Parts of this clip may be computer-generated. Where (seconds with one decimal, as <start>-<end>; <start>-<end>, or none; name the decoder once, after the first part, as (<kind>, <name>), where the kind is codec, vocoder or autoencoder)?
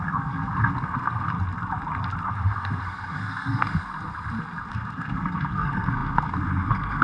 0.0-1.3 (codec, SNAC); 2.3-3.9; 4.7-7.0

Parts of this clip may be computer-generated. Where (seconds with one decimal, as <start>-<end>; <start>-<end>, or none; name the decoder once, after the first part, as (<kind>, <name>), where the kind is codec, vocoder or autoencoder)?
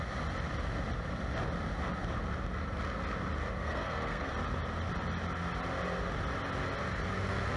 3.6-4.3 (codec, SNAC)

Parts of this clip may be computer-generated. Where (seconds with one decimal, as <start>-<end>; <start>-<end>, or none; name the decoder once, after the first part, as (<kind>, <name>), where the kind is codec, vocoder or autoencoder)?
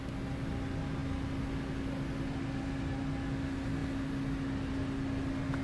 none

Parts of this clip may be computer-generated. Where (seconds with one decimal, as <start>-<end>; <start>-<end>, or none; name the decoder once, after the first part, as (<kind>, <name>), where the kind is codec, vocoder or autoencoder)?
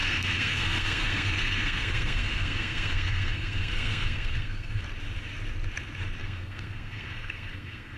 0.0-4.8 (codec, SNAC); 6.2-8.0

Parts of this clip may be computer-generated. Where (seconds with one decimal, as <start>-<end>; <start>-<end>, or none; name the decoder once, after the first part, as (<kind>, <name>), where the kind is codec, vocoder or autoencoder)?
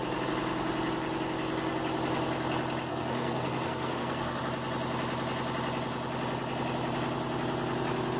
2.9-4.4 (codec, SNAC)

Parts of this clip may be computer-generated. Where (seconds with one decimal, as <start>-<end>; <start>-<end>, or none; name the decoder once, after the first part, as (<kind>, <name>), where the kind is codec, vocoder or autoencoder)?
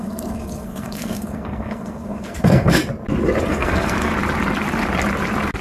0.0-2.8 (codec, SNAC); 3.5-4.1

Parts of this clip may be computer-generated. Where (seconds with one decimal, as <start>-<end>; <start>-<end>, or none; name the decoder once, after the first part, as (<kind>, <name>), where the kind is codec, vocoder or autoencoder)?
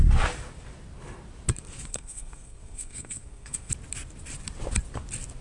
1.9-3.7 (codec, SNAC)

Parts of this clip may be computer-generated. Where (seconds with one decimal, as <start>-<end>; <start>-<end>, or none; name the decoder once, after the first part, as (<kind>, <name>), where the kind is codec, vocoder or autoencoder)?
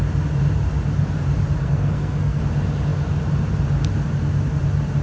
1.6-2.4 (codec, SNAC)